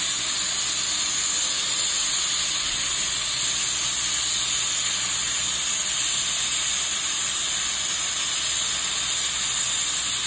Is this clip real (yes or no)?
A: yes